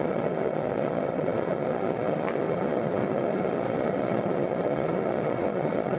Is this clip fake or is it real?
fake